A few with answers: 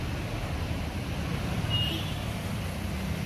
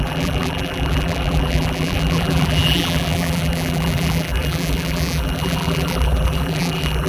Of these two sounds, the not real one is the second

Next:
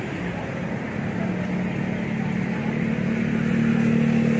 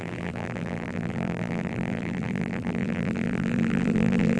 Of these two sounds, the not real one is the second